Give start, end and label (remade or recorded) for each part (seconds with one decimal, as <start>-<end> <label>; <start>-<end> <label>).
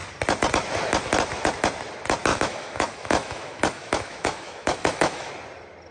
0.0-2.3 recorded; 2.3-5.3 remade; 5.3-5.9 recorded